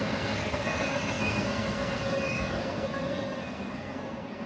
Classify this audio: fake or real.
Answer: fake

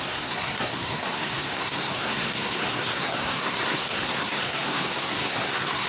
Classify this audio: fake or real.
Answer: fake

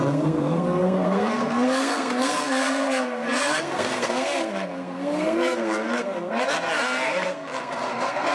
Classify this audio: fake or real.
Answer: fake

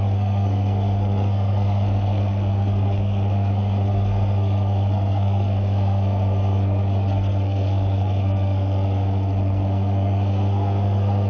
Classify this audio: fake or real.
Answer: fake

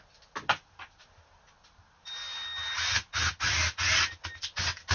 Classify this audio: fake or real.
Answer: real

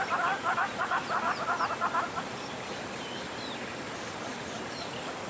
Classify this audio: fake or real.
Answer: real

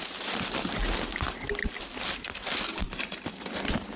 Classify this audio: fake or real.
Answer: real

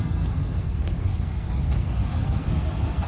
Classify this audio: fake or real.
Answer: fake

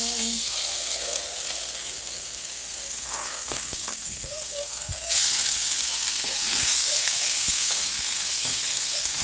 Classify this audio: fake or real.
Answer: fake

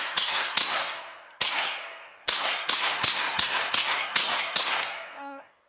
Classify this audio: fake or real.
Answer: fake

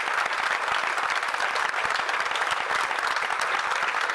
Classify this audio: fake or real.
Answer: real